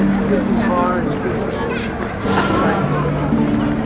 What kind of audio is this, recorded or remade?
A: recorded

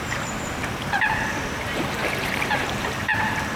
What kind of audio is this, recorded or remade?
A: remade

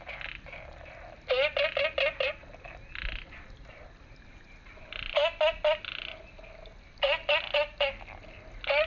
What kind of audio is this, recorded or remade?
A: recorded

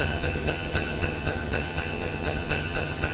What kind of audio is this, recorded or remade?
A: remade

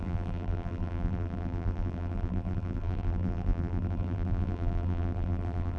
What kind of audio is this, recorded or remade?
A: remade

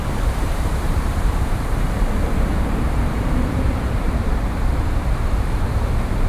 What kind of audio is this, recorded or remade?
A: remade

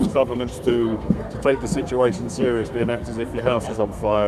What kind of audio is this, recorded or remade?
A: remade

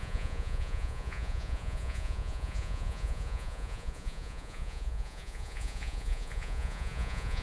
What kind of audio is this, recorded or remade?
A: remade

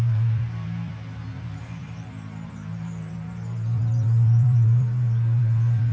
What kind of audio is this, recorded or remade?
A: remade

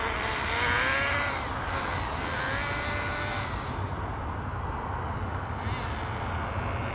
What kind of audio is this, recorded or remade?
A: recorded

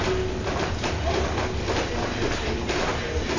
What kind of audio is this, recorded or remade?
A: recorded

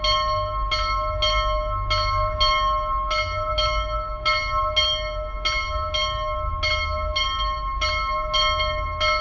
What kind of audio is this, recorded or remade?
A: recorded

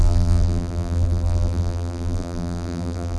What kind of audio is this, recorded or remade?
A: remade